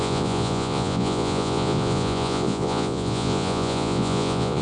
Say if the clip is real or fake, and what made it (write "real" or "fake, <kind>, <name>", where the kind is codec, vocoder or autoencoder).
fake, vocoder, Vocos